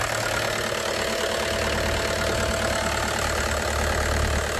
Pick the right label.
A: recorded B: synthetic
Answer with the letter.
A